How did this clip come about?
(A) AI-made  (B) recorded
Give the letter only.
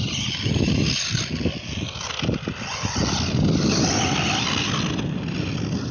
B